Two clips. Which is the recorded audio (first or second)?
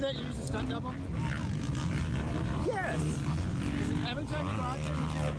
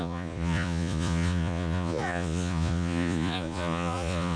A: first